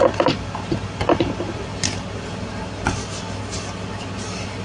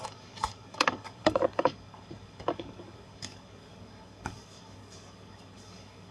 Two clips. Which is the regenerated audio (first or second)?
second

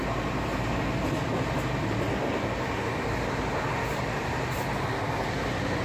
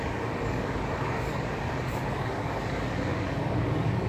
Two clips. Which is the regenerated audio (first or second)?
second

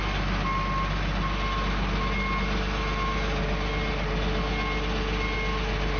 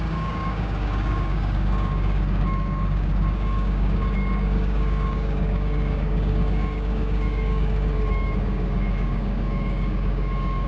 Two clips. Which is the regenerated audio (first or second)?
second